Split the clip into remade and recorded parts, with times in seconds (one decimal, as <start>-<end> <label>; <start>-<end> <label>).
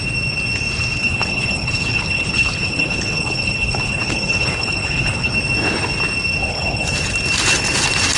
0.0-1.0 recorded; 1.0-5.3 remade; 5.3-6.5 recorded; 6.5-7.0 remade; 7.0-8.2 recorded